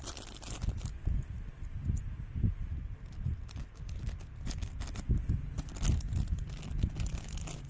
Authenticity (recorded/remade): recorded